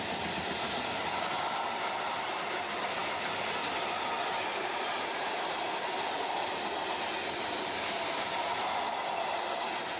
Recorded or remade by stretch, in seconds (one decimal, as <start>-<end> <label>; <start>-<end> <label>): 0.0-10.0 recorded